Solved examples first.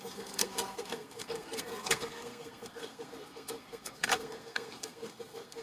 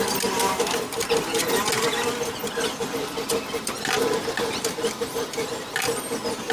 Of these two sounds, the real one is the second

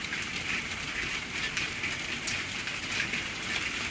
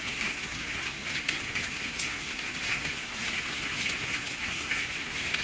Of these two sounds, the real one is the first